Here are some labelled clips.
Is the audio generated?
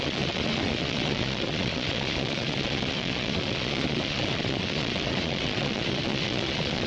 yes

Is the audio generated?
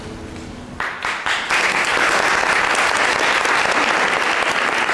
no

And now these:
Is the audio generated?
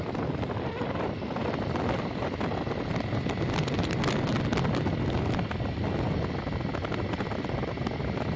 no